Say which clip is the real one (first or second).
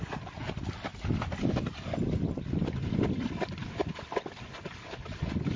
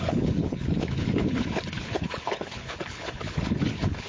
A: first